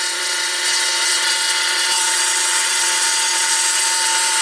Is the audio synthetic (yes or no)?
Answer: yes